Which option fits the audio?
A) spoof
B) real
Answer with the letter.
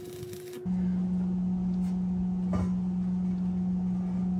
B